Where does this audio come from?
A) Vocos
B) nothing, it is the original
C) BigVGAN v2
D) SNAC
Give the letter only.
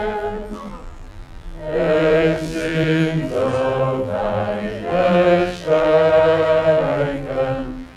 C